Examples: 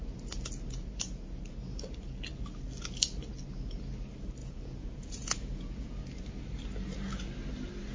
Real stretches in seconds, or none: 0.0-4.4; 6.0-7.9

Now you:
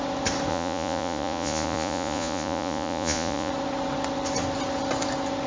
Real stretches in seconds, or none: 0.0-0.5; 3.5-5.5

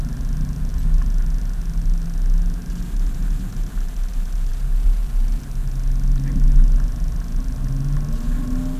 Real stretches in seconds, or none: 0.0-8.8

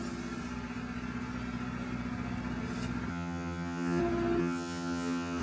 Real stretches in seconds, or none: 0.0-3.1; 4.0-4.4

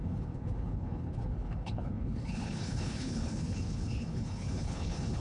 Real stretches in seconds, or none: none

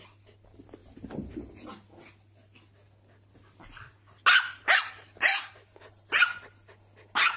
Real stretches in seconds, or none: 0.0-7.4

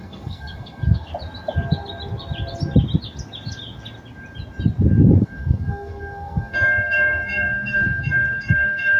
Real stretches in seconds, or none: 1.1-5.2